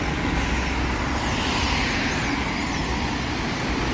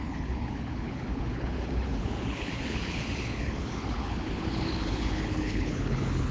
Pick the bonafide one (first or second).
first